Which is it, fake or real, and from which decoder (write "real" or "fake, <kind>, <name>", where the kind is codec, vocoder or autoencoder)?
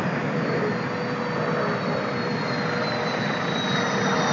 real